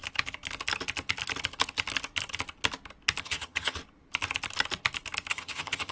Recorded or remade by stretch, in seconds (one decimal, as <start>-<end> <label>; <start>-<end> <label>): 0.0-3.2 recorded; 3.2-3.8 remade; 3.8-5.3 recorded; 5.3-5.9 remade